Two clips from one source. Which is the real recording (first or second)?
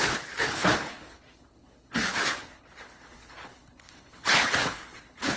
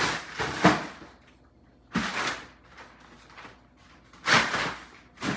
second